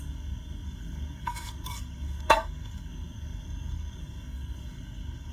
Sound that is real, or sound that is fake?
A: fake